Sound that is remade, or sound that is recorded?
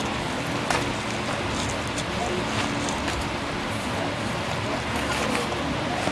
recorded